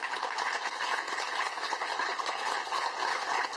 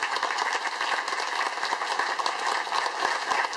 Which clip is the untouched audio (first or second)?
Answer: second